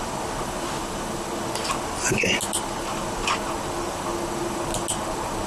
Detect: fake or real real